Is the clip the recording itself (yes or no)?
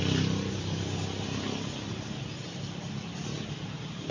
yes